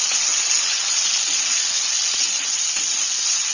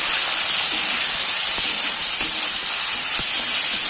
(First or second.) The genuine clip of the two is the second